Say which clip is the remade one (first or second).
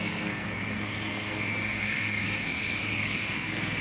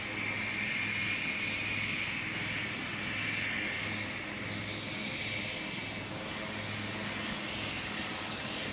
first